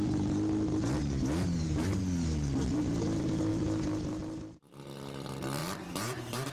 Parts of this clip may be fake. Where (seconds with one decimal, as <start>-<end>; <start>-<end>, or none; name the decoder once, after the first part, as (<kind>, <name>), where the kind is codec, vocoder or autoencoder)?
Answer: 1.2-2.0 (vocoder, BigVGAN v2); 5.6-6.5